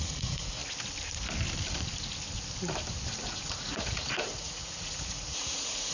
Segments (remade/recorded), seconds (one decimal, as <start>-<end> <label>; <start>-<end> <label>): 0.0-0.6 remade; 0.6-3.3 recorded; 3.3-5.9 remade